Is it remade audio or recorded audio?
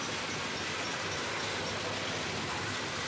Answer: recorded